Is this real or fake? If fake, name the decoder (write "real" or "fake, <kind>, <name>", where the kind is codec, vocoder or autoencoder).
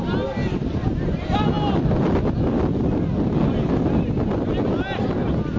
real